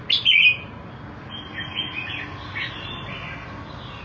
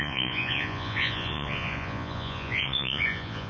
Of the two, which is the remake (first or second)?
second